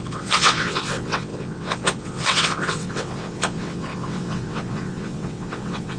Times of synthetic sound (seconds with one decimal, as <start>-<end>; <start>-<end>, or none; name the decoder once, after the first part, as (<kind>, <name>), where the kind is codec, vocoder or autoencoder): 0.0-6.0 (vocoder, WaveNeXt)